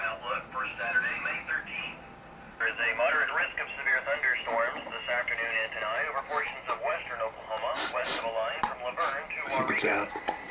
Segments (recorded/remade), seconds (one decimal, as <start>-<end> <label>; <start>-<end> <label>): 0.0-0.7 recorded; 0.7-1.5 remade; 1.5-10.5 recorded